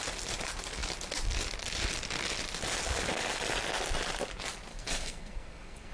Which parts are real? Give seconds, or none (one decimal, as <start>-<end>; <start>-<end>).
0.0-4.7